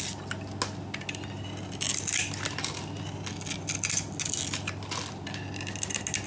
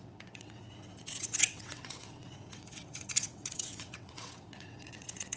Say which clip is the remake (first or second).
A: second